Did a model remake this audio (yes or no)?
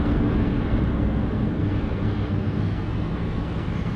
yes